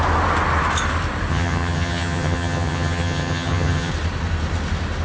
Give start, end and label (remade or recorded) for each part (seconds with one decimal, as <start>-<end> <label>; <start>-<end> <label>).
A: 0.0-1.3 recorded; 1.3-3.9 remade; 3.9-5.0 recorded